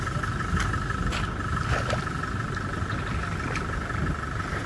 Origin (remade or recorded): recorded